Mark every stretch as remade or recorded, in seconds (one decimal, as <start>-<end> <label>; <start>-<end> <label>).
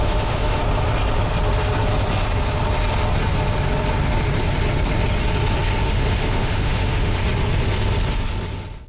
0.0-0.6 remade; 0.6-5.8 recorded; 5.8-7.2 remade; 7.2-8.9 recorded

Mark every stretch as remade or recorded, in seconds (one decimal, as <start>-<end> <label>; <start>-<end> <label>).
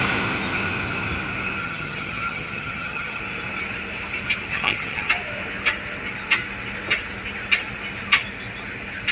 0.0-1.6 recorded; 1.6-3.2 remade; 3.2-4.5 recorded; 4.5-5.1 remade; 5.1-9.1 recorded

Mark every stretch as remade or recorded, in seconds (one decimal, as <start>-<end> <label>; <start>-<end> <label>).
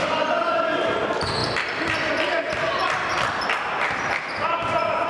0.0-1.4 recorded; 1.4-2.1 remade; 2.1-2.8 recorded; 2.8-3.4 remade; 3.4-5.1 recorded